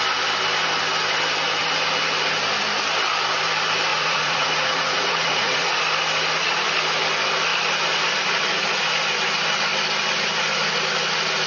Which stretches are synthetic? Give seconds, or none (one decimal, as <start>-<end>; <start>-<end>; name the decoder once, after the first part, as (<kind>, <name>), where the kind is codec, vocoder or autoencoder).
3.9-5.8 (vocoder, Vocos)